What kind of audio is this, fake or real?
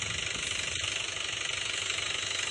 real